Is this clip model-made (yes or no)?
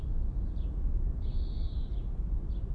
no